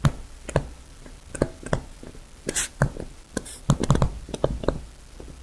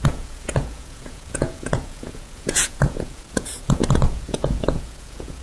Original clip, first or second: first